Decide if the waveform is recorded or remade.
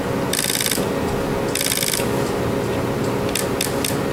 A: recorded